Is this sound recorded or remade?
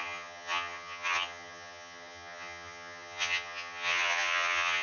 remade